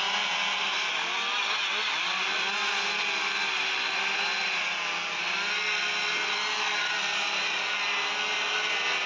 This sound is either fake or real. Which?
real